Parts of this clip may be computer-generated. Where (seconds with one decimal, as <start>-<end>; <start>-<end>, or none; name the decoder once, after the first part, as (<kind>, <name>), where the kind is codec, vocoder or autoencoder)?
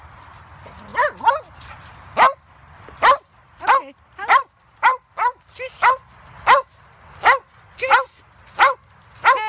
3.0-3.6 (vocoder, BigVGAN v2)